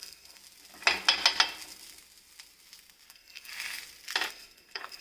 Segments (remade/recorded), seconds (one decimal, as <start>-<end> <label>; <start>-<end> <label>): 0.0-0.4 remade; 0.4-3.1 recorded; 3.1-3.5 remade; 3.5-4.3 recorded; 4.3-5.0 remade